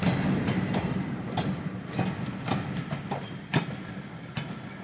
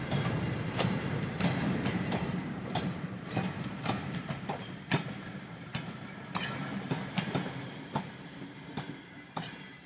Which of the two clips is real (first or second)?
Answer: first